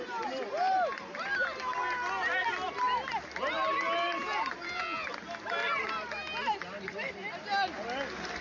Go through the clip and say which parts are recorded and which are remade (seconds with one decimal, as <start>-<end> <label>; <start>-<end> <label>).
0.0-8.4 recorded